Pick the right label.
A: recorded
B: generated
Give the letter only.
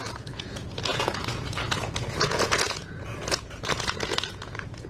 B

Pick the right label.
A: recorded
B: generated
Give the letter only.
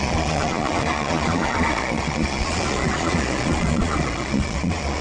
B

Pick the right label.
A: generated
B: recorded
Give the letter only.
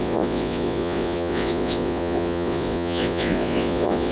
A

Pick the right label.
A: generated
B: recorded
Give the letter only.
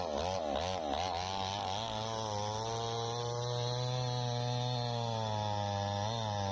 B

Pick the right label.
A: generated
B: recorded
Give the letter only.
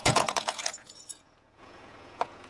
A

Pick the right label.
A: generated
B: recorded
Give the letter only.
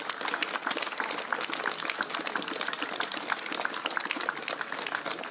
B